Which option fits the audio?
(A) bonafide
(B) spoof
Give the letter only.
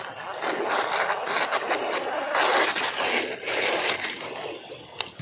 A